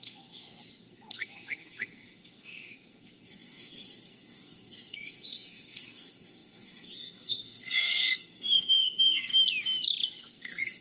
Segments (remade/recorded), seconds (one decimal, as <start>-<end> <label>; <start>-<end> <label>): 0.0-9.3 remade; 9.3-10.2 recorded; 10.2-10.8 remade